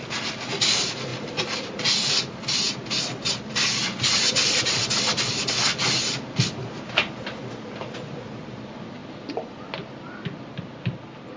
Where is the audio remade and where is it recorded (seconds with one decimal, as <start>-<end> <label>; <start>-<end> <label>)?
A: 0.0-11.4 recorded